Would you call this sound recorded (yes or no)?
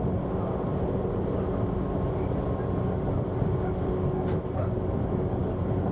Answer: yes